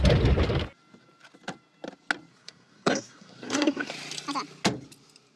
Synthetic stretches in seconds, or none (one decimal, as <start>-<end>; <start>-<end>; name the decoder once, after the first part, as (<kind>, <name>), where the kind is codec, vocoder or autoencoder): 2.3-3.9 (codec, SNAC)